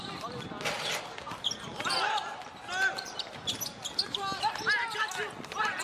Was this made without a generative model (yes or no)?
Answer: yes